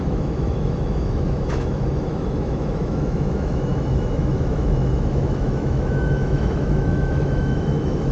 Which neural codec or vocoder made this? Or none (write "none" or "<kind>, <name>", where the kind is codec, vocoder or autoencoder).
autoencoder, DAC-VAE